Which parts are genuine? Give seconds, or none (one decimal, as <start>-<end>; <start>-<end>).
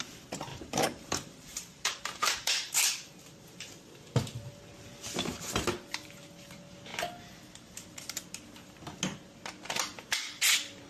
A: 0.0-0.5; 2.8-10.9